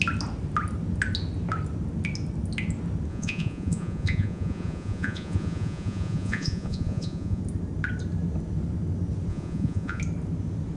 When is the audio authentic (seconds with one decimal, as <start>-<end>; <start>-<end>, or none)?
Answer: 0.0-3.1; 7.4-9.3; 10.0-10.8